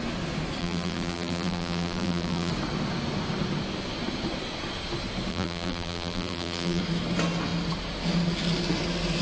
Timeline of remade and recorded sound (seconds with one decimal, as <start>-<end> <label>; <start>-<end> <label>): 0.0-0.6 recorded; 0.6-2.5 remade; 2.5-5.3 recorded; 5.3-6.8 remade; 6.8-9.2 recorded